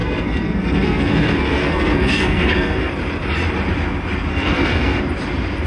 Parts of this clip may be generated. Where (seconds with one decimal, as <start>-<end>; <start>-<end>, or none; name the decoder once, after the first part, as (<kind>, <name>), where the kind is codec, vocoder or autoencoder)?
0.0-2.9 (codec, SNAC); 4.3-5.0